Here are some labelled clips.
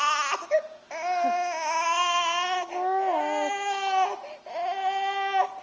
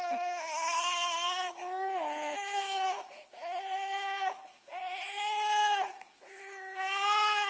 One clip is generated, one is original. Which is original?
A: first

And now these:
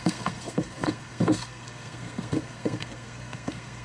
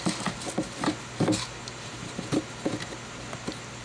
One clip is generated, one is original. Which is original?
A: second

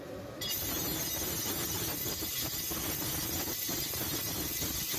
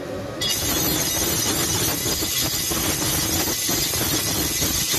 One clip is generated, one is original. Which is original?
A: second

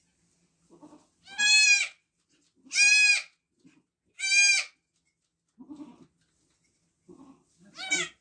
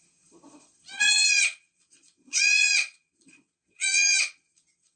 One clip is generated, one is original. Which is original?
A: first